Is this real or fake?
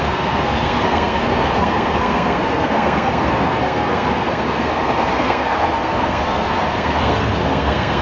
fake